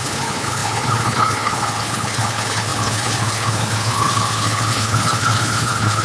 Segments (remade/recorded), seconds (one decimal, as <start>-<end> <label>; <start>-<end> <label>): 0.0-6.0 remade

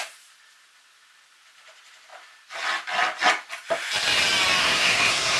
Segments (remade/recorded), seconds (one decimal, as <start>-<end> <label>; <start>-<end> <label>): 0.0-4.6 recorded; 4.6-5.4 remade

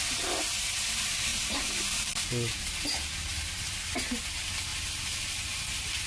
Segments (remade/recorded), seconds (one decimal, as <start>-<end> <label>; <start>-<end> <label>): 0.0-1.3 recorded; 1.3-2.6 remade; 2.6-6.1 recorded

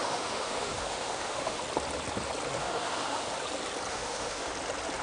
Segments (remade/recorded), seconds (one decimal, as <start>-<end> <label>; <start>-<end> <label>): 0.0-1.6 remade; 1.6-2.6 recorded; 2.6-3.3 remade; 3.3-3.9 recorded; 3.9-4.5 remade; 4.5-5.0 recorded

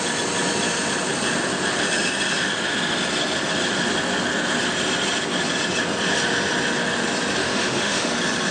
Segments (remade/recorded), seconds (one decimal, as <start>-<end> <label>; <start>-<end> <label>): 0.0-7.4 recorded; 7.4-8.1 remade; 8.1-8.5 recorded

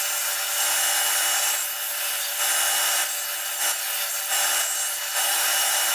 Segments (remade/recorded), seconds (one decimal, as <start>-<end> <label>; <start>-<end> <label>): 0.0-5.0 recorded; 5.0-5.9 remade

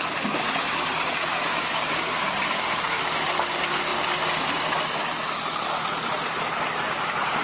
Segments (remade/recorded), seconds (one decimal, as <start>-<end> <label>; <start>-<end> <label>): 0.0-1.2 recorded; 1.2-3.0 remade; 3.0-7.4 recorded